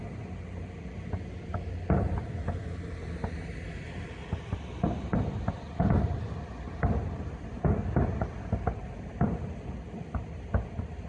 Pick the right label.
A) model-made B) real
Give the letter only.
B